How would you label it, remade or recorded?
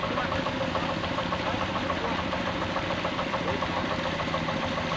recorded